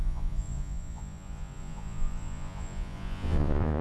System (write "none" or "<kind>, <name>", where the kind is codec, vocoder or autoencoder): vocoder, Vocos